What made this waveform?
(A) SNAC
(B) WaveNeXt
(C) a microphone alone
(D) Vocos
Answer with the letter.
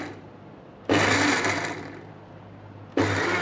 C